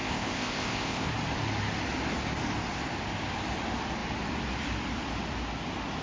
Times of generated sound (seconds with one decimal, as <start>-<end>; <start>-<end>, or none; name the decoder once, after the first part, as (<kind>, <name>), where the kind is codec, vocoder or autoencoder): 0.0-1.1 (codec, ZipCodec)

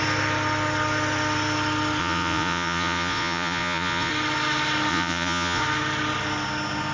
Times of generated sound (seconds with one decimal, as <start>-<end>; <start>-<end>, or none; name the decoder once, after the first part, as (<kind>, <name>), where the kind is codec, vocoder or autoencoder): 2.0-4.1 (vocoder, Vocos); 4.9-5.6

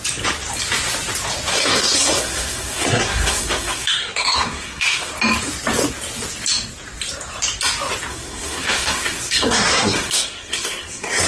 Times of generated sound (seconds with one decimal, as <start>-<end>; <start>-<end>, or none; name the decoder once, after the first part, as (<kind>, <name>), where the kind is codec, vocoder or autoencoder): 1.5-5.1 (codec, SNAC); 8.1-11.3

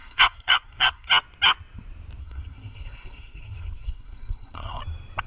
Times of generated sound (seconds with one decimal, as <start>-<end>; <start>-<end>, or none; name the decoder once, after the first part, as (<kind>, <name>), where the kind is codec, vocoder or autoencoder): 0.0-1.1 (codec, SNAC); 2.2-4.8

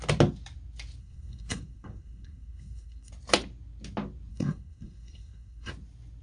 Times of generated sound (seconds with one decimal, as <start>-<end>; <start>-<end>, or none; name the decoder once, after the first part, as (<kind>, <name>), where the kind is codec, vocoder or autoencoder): 1.0-3.1 (codec, SNAC); 4.3-5.7

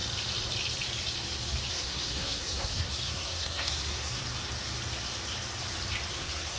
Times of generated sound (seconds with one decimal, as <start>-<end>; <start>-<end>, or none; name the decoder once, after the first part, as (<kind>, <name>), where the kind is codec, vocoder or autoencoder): 1.7-4.2 (codec, SNAC); 6.1-6.6

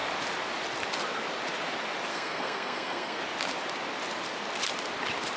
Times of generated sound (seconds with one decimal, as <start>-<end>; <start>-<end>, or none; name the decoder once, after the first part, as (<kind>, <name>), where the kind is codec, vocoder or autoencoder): 2.1-3.2 (codec, SNAC)